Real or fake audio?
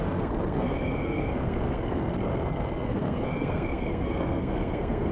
fake